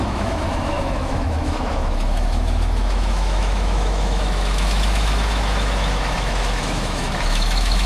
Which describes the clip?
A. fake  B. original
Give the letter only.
A